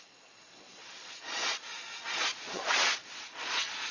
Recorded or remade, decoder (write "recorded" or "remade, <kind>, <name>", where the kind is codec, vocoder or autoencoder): remade, vocoder, Vocos